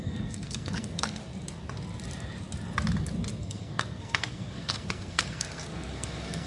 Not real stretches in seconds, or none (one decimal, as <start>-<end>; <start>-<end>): 0.0-1.2; 3.4-6.5